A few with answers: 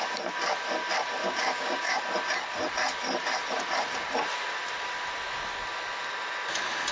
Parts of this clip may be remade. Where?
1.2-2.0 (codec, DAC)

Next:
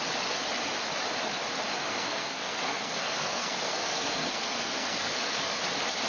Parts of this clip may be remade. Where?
1.9-5.6 (codec, SNAC)

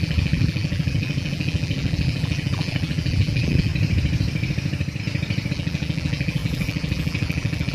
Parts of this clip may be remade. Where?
0.0-3.7 (vocoder, BigVGAN v2); 5.5-7.7

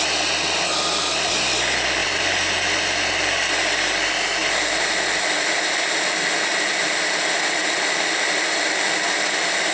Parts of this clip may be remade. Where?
none

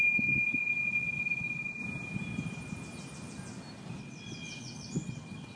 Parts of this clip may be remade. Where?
0.0-1.8 (vocoder, WaveNeXt); 4.0-5.6